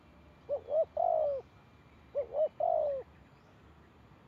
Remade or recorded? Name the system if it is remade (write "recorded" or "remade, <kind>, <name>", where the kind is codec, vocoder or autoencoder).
recorded